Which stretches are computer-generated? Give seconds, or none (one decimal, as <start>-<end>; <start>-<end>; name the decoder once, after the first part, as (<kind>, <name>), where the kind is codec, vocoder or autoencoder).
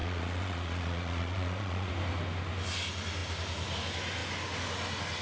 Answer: 0.0-1.9 (vocoder, Vocos)